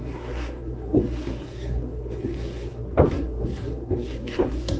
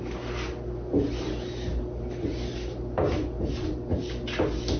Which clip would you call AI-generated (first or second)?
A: first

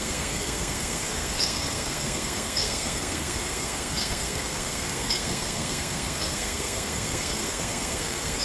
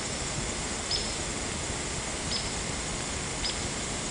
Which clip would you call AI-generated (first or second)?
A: first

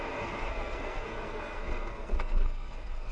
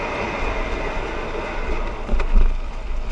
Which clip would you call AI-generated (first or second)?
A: first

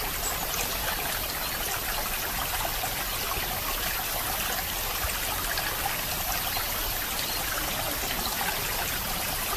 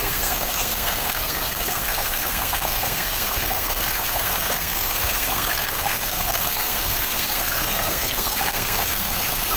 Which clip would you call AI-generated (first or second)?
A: second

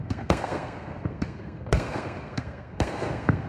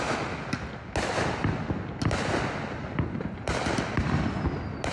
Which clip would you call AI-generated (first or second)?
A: first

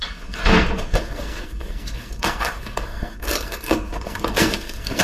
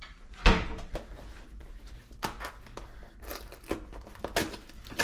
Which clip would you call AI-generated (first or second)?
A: first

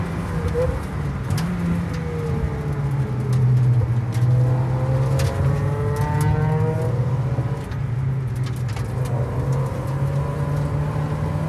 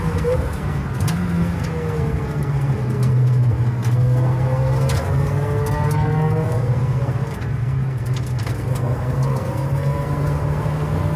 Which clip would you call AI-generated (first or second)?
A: second